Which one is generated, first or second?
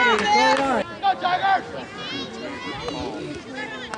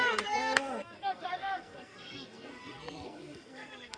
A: second